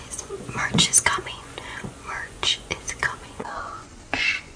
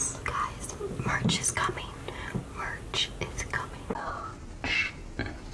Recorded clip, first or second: second